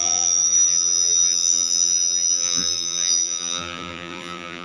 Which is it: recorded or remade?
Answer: remade